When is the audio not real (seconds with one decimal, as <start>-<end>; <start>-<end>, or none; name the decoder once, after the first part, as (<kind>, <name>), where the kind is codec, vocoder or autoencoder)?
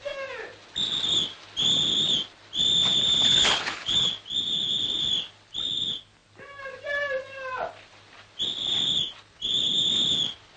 3.2-4.1 (codec, HILCodec)